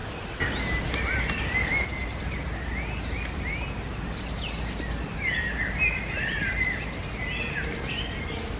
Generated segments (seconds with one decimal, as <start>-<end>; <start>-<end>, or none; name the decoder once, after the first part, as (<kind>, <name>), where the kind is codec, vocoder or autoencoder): 2.0-7.0 (vocoder, BigVGAN v2)